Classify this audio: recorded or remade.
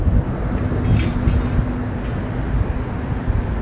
recorded